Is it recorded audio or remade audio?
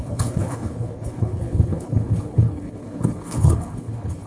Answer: remade